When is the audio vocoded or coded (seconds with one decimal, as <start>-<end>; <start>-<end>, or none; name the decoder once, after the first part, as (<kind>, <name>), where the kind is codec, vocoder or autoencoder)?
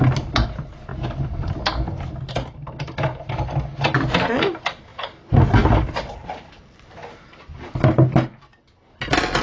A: 0.9-2.3 (vocoder, BigVGAN v2)